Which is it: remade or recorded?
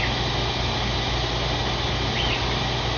recorded